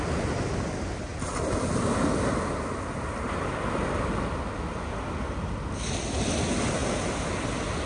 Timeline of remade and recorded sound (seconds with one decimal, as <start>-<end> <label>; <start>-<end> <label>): 0.0-7.9 recorded